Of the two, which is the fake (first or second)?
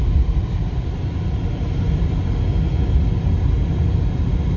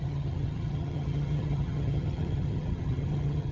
second